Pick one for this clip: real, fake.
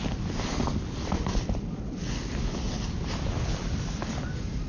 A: real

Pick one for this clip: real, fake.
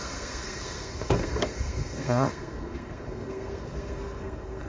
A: fake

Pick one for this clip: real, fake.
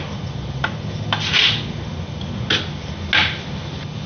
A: real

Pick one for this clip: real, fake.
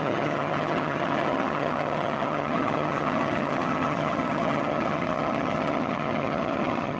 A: fake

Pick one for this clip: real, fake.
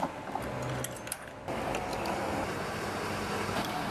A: real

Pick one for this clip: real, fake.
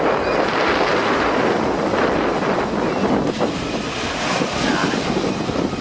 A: fake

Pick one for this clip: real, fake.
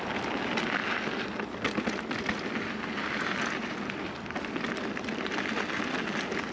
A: real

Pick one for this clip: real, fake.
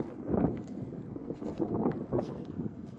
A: fake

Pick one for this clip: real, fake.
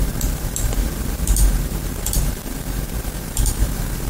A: fake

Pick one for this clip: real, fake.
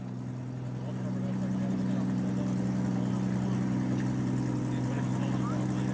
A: real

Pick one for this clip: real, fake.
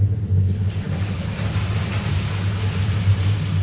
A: real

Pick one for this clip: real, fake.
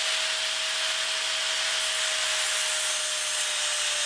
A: real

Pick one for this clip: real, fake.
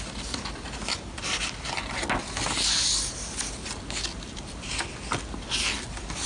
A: real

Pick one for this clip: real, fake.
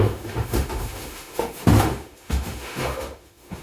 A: fake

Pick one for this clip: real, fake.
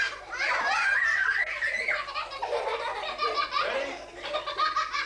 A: real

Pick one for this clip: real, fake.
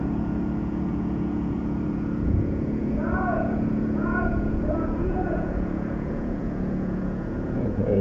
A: fake